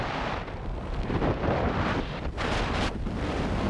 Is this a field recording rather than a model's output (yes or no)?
no